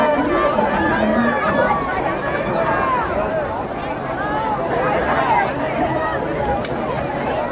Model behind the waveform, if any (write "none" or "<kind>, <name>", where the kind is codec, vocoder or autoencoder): none